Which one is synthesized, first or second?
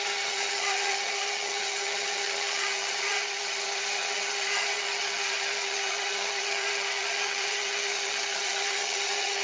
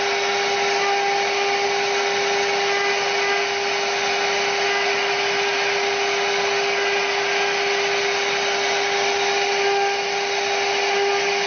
first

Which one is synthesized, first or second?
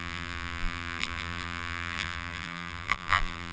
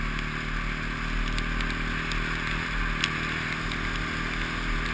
first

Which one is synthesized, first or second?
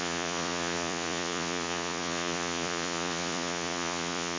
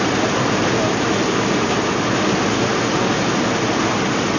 first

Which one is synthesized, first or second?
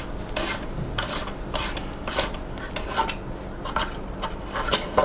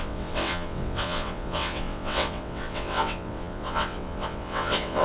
second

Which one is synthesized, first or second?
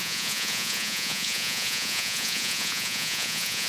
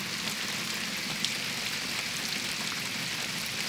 first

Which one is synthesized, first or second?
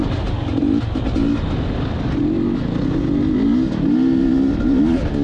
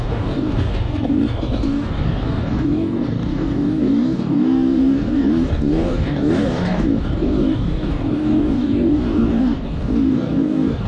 second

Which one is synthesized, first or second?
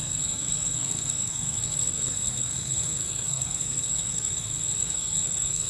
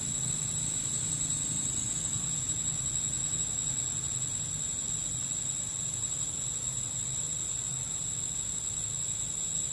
first